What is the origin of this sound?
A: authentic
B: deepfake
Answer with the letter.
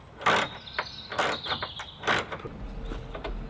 A